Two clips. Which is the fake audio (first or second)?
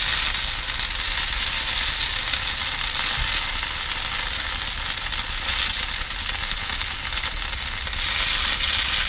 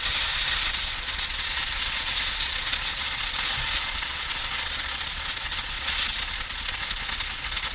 second